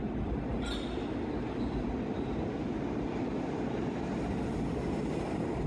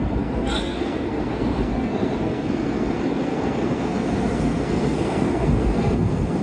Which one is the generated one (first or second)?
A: second